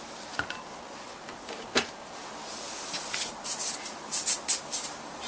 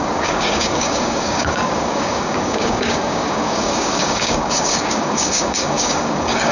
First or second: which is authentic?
first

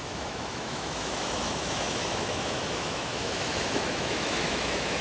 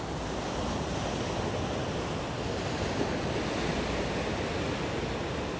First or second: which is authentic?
second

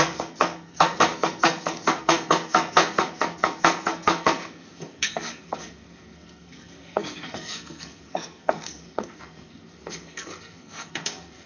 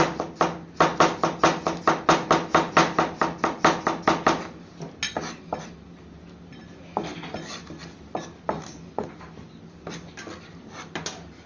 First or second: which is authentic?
second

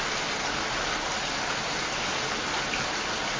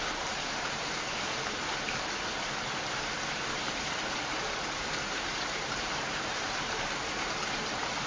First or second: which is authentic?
first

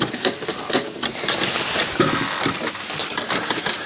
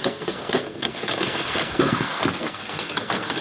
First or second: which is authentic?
first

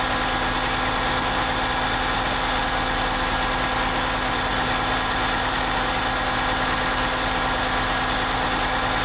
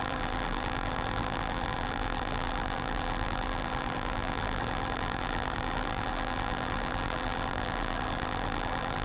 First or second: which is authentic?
first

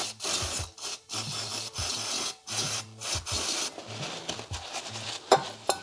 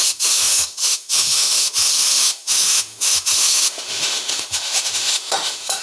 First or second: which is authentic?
first